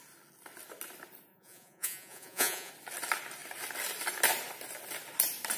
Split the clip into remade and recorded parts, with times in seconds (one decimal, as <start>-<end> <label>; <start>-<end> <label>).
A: 0.0-1.3 recorded; 1.3-2.7 remade; 2.7-5.6 recorded